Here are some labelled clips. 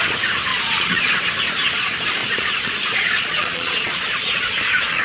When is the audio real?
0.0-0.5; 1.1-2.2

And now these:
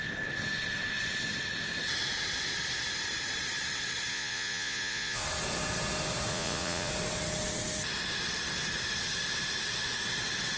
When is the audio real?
0.0-4.1; 5.2-6.3; 6.9-10.6

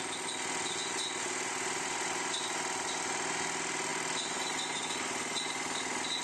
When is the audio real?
0.0-6.2

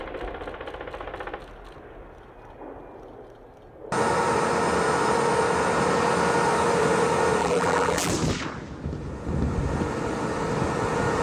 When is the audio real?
0.0-7.4; 8.1-11.2

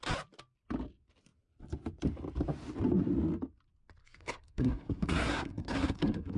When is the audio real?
0.0-4.0

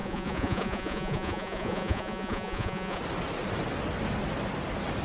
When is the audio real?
3.0-5.0

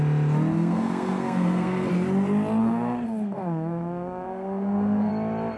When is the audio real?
0.0-0.5; 1.9-2.6; 5.1-5.6